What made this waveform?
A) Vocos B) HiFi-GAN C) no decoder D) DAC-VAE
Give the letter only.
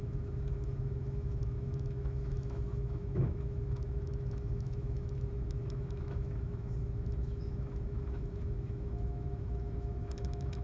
D